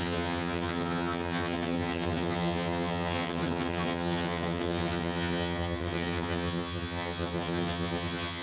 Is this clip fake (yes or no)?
yes